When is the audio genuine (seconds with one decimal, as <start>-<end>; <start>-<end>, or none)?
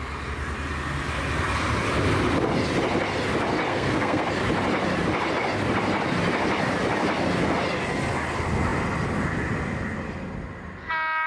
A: 0.0-3.7; 4.3-11.3